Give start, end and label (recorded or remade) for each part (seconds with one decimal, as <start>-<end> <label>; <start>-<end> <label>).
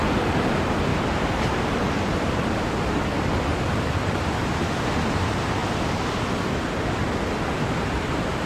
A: 0.0-0.9 recorded; 0.9-1.7 remade; 1.7-3.5 recorded; 3.5-4.7 remade; 4.7-7.5 recorded; 7.5-8.5 remade